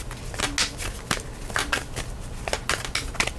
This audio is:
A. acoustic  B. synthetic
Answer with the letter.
A